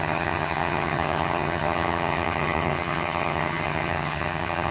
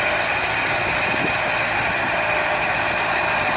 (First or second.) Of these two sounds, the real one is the second